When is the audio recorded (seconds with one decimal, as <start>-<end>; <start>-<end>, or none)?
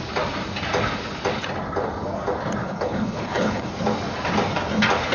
0.0-2.6; 3.7-5.1